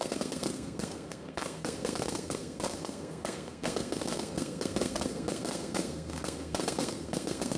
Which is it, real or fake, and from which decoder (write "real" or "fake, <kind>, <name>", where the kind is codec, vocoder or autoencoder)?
fake, codec, SNAC